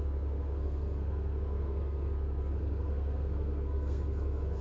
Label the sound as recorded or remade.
remade